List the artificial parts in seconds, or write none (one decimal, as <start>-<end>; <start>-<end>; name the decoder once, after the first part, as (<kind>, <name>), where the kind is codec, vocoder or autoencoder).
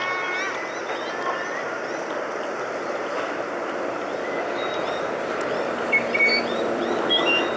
0.8-4.8 (vocoder, BigVGAN v2)